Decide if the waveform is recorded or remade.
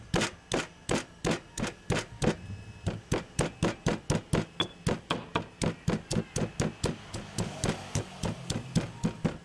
recorded